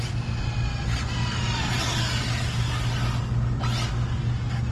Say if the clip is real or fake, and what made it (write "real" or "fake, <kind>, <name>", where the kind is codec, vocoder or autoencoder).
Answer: real